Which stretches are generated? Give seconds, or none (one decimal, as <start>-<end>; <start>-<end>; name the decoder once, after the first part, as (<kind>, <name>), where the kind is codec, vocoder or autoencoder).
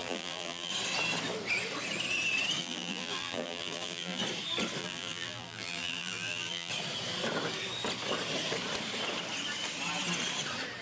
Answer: 0.0-0.7 (vocoder, BigVGAN v2); 2.6-4.2; 4.8-6.7